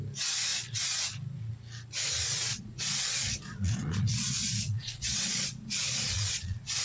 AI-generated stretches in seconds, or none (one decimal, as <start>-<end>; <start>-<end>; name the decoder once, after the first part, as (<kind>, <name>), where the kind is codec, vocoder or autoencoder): 2.5-6.8 (vocoder, Vocos)